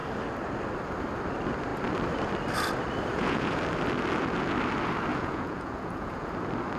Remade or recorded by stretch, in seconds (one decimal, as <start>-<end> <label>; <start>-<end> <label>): 0.0-3.1 recorded; 3.1-3.6 remade; 3.6-5.1 recorded; 5.1-6.3 remade; 6.3-6.8 recorded

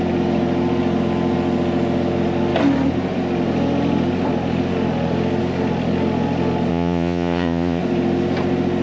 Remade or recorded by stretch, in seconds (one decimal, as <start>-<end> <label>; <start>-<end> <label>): 0.0-6.7 recorded; 6.7-7.8 remade; 7.8-8.8 recorded

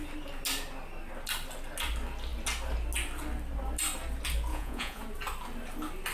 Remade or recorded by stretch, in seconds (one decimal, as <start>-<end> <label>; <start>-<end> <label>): 0.0-4.5 recorded; 4.5-5.0 remade; 5.0-6.1 recorded

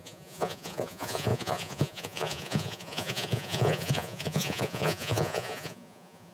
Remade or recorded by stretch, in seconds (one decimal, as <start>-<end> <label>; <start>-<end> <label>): 0.0-6.3 remade

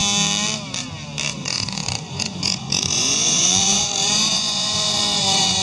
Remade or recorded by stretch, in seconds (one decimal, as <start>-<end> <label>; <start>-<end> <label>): 0.0-1.3 recorded; 1.3-5.6 remade

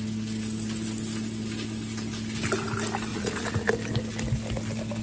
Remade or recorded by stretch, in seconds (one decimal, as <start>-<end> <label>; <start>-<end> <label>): 0.0-3.1 recorded; 3.1-3.7 remade; 3.7-5.0 recorded